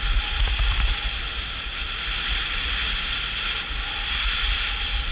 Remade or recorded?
recorded